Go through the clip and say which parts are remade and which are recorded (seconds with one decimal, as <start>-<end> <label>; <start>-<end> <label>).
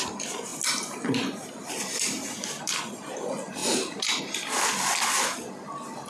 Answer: 0.0-6.1 recorded